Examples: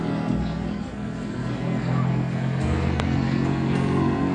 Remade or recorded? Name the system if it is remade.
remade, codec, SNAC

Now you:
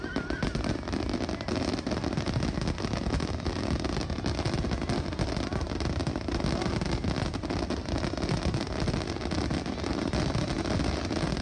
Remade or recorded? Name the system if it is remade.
recorded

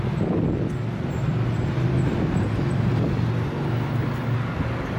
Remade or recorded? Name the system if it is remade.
recorded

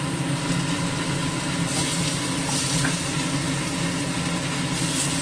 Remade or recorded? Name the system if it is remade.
recorded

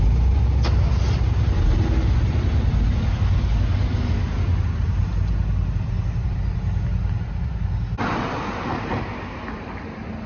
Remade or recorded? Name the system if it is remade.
recorded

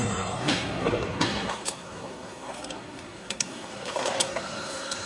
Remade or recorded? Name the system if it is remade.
remade, codec, SNAC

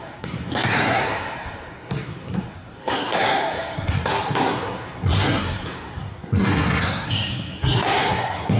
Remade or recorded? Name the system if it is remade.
remade, codec, SNAC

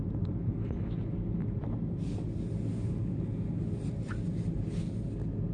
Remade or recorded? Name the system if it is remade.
recorded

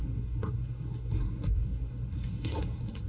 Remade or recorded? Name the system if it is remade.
remade, codec, SNAC